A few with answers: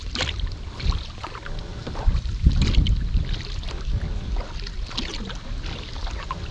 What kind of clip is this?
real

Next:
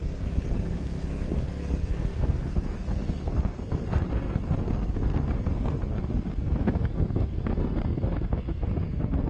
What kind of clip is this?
fake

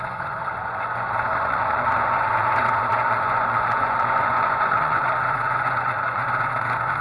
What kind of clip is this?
fake